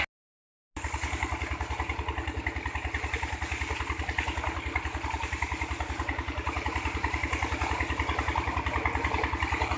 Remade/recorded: recorded